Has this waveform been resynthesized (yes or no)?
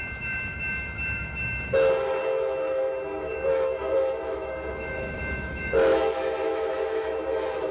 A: yes